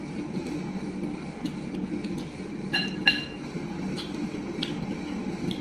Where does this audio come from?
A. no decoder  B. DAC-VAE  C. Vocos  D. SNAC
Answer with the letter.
A